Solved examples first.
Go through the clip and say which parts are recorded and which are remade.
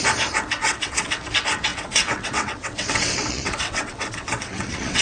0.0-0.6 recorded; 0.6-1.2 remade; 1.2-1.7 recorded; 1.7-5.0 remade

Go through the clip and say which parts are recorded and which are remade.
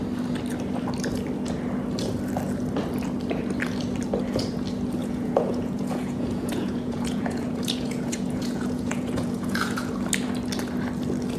0.0-5.0 recorded; 5.0-9.9 remade; 9.9-11.4 recorded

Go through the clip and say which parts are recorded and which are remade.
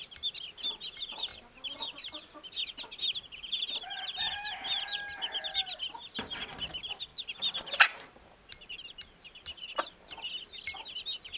0.0-11.4 recorded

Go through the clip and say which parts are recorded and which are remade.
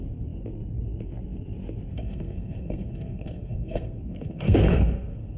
0.0-1.9 recorded; 1.9-5.4 remade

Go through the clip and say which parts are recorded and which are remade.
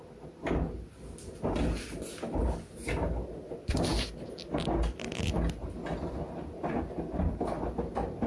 0.0-8.3 recorded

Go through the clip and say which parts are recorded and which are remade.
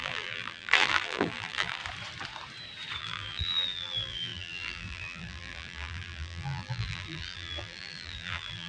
0.0-1.8 remade; 1.8-3.0 recorded; 3.0-8.7 remade